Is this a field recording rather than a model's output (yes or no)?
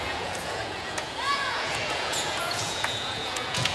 no